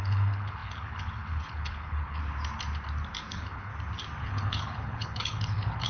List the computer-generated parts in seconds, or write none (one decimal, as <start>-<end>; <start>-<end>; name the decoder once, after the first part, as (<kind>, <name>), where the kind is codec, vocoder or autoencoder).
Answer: 0.0-2.2 (codec, HILCodec); 3.3-3.7; 4.2-5.9